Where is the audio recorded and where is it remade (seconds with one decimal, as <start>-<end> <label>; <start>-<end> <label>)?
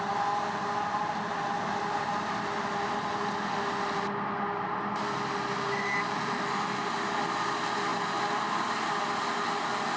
0.0-10.0 recorded